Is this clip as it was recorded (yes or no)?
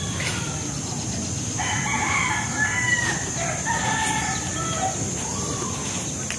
yes